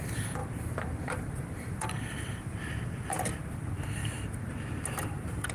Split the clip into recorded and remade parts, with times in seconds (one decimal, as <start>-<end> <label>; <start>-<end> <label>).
0.0-0.4 recorded; 0.4-2.0 remade; 2.0-2.4 recorded; 2.4-3.0 remade; 3.0-5.5 recorded

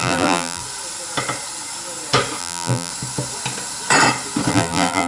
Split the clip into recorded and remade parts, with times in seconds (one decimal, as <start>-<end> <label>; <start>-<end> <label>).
0.0-0.6 remade; 0.6-2.4 recorded; 2.4-2.9 remade; 2.9-4.5 recorded; 4.5-5.1 remade

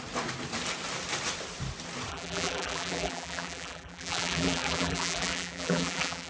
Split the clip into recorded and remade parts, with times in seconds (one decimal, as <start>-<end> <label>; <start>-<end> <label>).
0.0-2.1 recorded; 2.1-6.3 remade

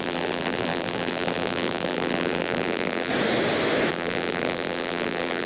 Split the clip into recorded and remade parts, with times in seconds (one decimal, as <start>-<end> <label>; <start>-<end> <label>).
0.0-3.1 remade; 3.1-3.9 recorded; 3.9-5.5 remade